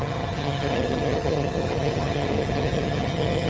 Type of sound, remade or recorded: remade